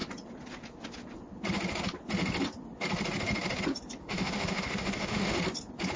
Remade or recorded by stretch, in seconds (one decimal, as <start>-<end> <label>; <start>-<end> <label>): 0.0-4.0 recorded; 4.0-5.4 remade; 5.4-6.0 recorded